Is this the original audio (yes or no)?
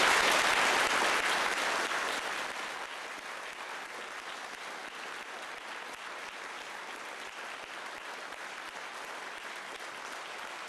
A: yes